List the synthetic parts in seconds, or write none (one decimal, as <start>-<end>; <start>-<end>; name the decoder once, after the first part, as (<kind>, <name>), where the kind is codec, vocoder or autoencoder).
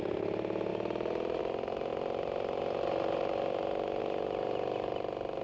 none